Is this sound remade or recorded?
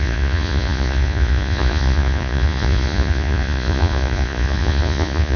remade